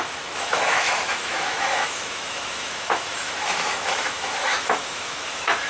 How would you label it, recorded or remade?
remade